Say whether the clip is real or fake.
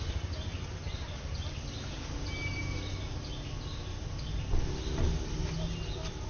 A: real